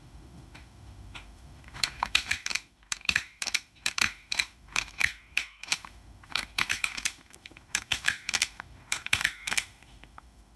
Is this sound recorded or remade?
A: remade